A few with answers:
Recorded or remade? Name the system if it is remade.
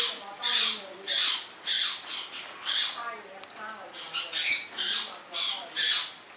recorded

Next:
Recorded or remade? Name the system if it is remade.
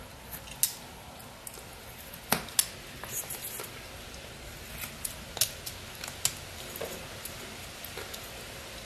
recorded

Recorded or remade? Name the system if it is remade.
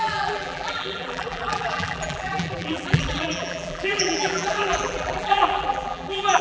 remade, vocoder, BigVGAN v2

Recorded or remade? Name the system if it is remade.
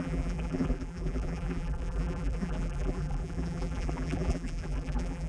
remade, vocoder, BigVGAN v2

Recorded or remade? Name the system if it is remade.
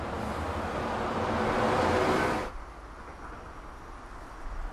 recorded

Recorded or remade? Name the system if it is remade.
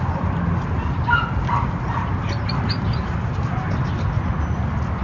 recorded